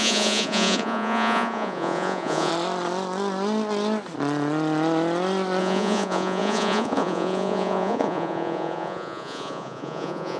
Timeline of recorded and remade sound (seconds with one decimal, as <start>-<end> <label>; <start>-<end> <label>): 0.0-2.5 remade; 2.5-5.6 recorded; 5.6-10.4 remade